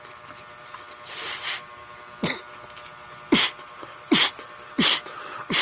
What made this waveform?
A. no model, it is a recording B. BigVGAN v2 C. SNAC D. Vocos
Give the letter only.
A